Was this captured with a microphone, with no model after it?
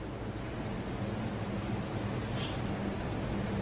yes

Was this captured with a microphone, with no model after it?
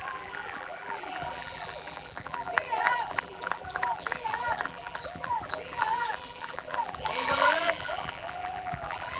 no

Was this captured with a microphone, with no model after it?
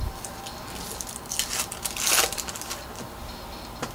yes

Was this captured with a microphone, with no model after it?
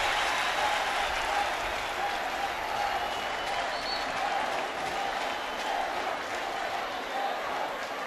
yes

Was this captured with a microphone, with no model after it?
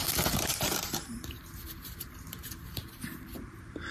no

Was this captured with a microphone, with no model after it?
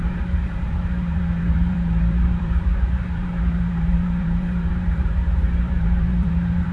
no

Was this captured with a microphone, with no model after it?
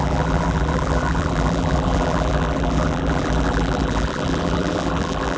no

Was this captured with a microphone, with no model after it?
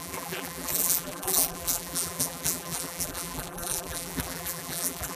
no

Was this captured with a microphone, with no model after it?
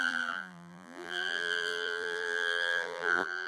no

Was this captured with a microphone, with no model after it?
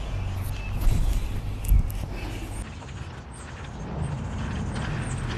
yes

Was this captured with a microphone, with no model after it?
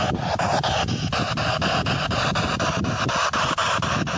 yes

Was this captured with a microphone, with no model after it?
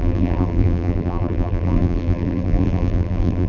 no